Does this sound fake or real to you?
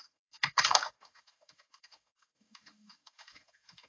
fake